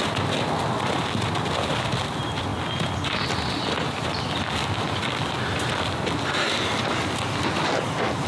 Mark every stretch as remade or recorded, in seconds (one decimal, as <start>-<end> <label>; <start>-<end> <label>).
0.0-8.3 recorded